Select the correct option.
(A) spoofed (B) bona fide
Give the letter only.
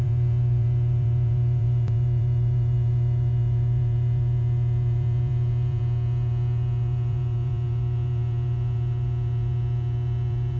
A